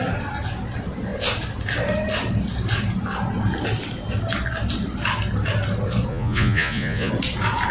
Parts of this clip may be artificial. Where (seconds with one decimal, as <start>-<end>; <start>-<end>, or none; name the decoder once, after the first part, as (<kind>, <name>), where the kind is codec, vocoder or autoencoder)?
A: 6.1-7.1 (vocoder, Vocos)